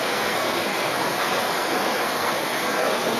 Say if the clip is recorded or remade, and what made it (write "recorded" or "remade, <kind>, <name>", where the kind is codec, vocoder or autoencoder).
remade, codec, SNAC